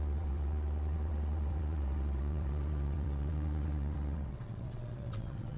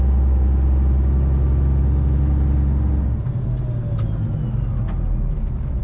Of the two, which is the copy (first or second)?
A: first